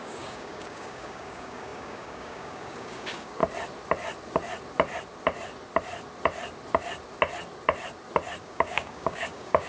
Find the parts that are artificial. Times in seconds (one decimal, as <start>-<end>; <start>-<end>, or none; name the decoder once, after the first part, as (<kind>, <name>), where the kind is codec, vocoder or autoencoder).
0.0-3.4 (codec, DAC); 8.4-9.7